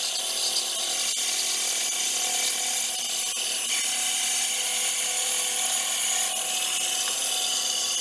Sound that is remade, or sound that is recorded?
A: recorded